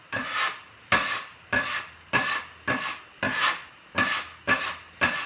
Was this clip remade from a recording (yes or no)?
no